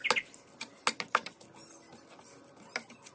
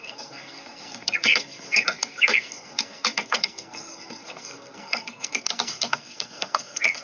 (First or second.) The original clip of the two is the first